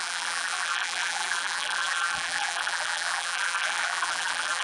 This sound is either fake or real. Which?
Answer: fake